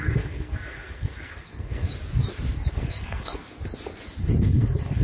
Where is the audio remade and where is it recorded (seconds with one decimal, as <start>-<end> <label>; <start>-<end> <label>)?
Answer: 0.0-1.9 remade; 1.9-2.7 recorded; 2.7-3.4 remade; 3.4-4.2 recorded; 4.2-5.0 remade